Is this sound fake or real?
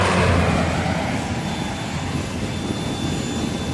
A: real